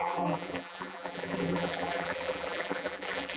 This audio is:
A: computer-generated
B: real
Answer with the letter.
A